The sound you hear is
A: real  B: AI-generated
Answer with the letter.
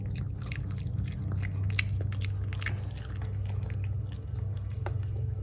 A